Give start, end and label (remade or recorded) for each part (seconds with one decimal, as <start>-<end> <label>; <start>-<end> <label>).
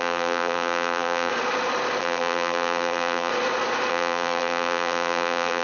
0.0-1.3 remade; 1.3-2.0 recorded; 2.0-3.3 remade; 3.3-3.9 recorded; 3.9-5.6 remade